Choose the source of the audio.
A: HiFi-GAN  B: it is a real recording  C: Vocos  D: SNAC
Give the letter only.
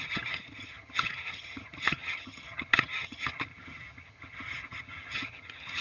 A